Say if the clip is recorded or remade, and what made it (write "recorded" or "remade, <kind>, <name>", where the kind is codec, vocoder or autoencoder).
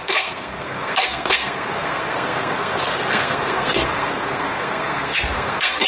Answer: remade, codec, SNAC